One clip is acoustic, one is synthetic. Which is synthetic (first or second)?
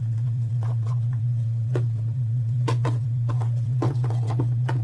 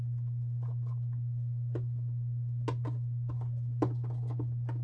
first